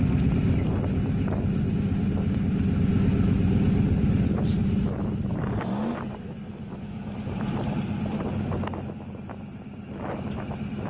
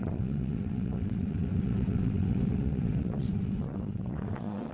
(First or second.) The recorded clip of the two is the first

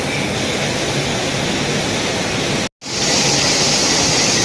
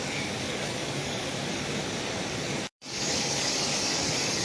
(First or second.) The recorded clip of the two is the first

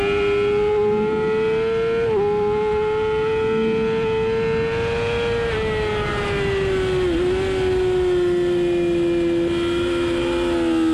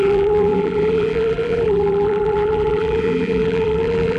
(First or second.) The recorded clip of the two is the first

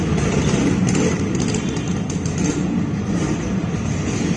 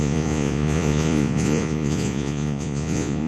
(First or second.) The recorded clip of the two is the first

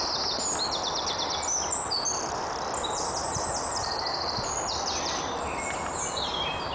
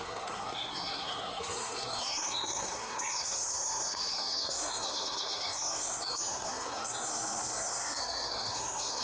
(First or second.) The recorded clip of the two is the first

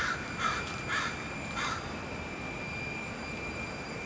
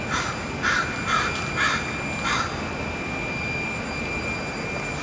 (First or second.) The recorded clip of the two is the second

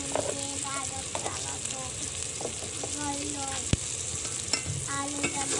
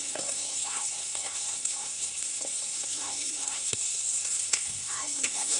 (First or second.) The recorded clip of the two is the first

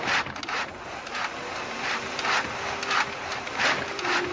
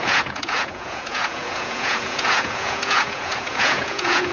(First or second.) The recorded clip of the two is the first